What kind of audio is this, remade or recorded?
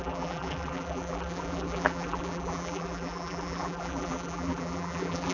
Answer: remade